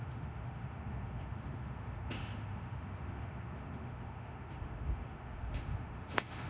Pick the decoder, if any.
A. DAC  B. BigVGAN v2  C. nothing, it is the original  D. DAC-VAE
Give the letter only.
D